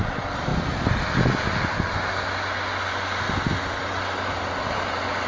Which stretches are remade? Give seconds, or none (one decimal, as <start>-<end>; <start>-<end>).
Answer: none